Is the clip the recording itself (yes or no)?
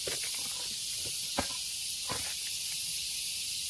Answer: yes